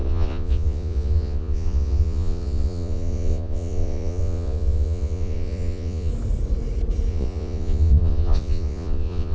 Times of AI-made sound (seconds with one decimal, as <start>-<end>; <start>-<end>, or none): 0.0-6.1; 7.1-9.3